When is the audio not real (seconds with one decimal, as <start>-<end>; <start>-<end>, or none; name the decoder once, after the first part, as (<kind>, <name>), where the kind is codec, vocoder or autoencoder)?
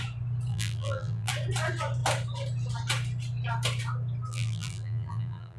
0.5-1.3 (vocoder, BigVGAN v2); 4.3-5.6